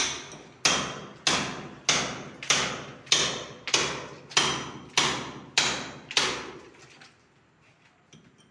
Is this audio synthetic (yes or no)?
no